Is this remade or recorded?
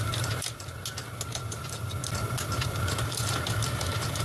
recorded